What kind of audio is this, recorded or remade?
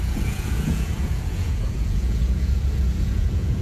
remade